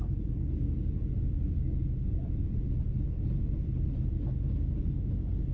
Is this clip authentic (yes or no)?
yes